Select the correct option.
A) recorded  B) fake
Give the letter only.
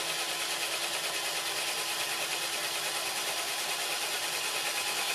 A